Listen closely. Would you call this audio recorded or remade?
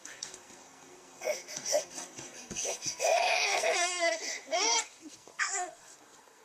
remade